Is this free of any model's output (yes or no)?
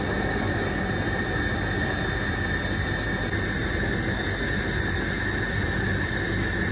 yes